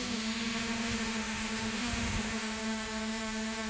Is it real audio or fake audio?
fake